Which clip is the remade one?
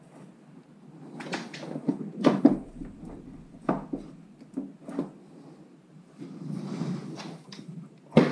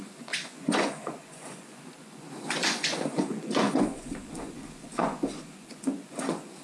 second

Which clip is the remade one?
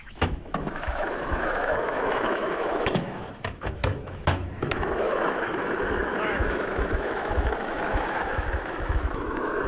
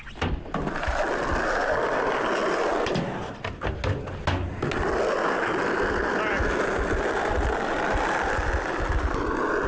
first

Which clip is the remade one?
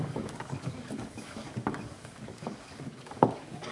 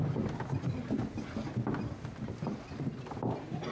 first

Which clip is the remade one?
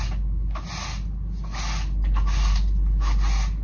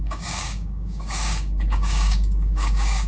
second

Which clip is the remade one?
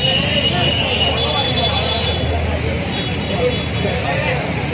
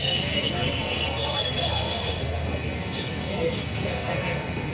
second